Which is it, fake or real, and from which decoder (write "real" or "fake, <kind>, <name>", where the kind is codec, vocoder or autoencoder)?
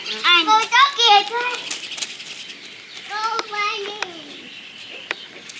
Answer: real